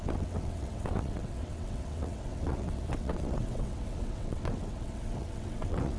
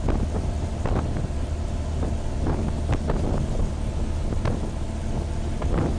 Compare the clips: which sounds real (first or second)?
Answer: second